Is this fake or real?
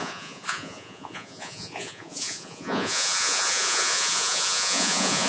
fake